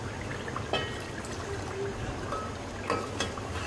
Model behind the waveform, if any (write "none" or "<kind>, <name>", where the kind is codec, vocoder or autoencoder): none